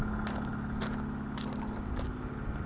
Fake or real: real